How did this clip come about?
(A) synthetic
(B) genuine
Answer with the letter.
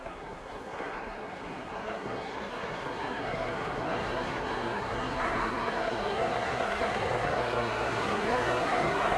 A